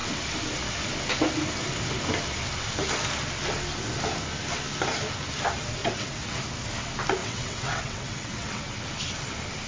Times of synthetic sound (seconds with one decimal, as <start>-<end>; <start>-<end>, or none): 5.8-6.4; 7.2-8.6